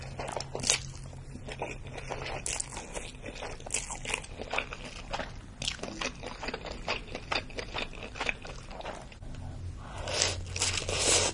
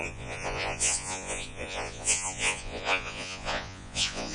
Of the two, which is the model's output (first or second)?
second